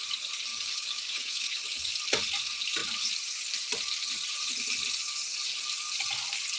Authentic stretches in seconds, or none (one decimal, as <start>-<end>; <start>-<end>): 0.0-0.5; 1.9-6.6